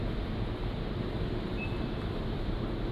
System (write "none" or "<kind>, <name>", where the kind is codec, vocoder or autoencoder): none